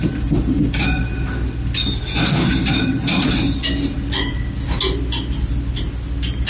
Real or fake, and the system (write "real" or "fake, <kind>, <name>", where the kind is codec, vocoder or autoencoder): real